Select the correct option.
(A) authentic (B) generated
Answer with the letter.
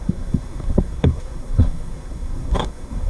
B